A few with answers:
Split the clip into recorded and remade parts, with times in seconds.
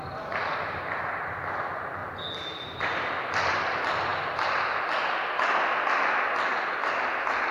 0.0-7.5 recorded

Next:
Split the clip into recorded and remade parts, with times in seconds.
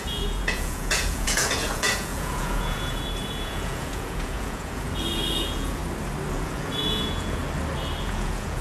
0.0-5.8 remade; 5.8-6.3 recorded; 6.3-7.4 remade; 7.4-8.0 recorded; 8.0-8.6 remade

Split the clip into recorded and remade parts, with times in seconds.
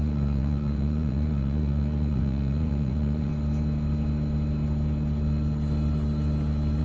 0.0-3.3 remade; 3.3-6.8 recorded